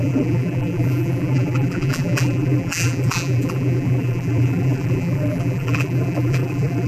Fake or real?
fake